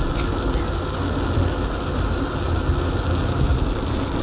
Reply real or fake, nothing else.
real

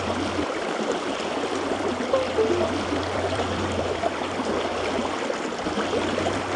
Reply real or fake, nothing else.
fake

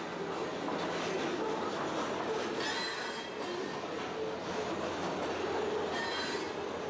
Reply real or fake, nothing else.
real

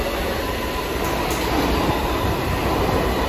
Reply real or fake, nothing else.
real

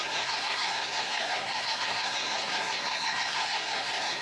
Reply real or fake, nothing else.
fake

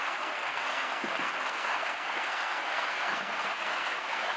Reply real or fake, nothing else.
fake